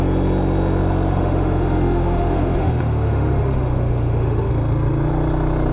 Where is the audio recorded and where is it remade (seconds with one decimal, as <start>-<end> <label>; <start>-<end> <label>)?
0.0-1.1 recorded; 1.1-4.5 remade; 4.5-5.7 recorded